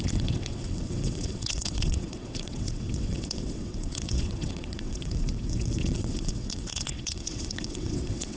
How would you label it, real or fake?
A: fake